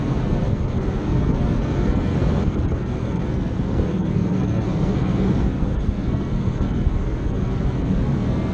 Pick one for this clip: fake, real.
fake